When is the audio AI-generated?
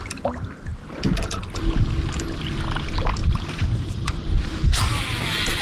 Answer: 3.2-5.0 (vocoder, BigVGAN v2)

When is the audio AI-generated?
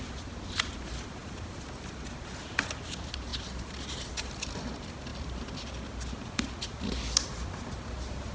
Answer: none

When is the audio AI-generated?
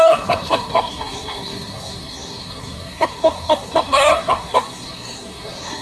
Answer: 0.0-5.8 (codec, SNAC)